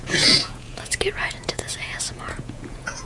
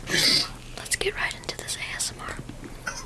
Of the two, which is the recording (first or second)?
second